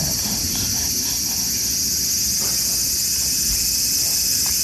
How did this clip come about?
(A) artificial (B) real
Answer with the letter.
B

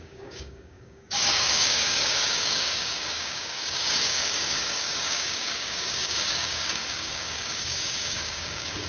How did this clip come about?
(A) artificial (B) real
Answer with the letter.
A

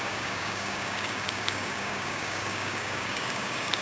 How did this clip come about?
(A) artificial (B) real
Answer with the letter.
A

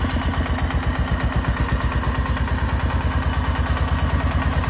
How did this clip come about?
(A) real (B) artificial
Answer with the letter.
A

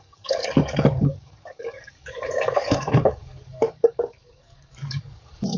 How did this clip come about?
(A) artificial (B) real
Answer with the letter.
A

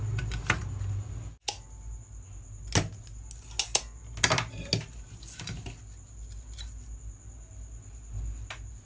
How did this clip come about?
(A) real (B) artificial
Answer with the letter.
A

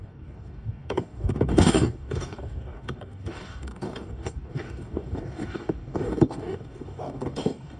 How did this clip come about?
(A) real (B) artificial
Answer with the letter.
B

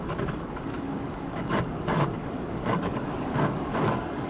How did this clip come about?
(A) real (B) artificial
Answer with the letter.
B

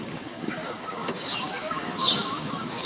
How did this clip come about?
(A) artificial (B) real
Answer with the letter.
A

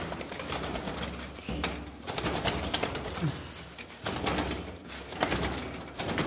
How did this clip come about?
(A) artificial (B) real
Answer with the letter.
B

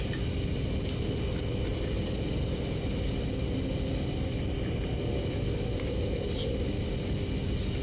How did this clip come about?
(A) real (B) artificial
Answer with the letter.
A